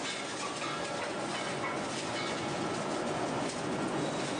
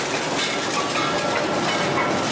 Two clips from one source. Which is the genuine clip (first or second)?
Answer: second